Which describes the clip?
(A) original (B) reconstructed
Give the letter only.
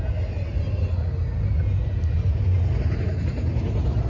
A